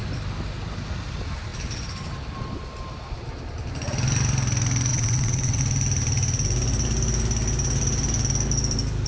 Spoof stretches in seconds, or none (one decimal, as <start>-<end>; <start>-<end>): 4.9-5.6